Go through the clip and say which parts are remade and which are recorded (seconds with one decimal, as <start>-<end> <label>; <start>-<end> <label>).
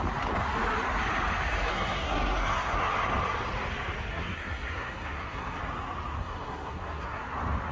0.0-1.7 recorded; 1.7-2.9 remade; 2.9-4.1 recorded; 4.1-5.6 remade; 5.6-6.2 recorded; 6.2-7.2 remade; 7.2-7.7 recorded